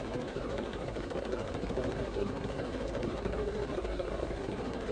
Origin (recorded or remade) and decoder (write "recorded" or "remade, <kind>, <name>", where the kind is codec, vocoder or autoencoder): remade, codec, SNAC